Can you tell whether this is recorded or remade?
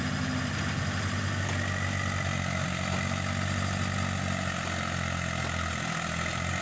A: recorded